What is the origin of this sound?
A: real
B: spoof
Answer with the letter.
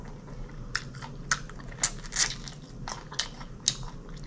A